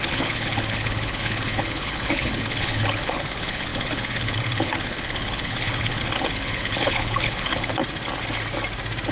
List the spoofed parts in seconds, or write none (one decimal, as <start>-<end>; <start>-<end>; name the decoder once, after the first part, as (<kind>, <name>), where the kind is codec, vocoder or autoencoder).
0.0-7.8 (codec, HILCodec)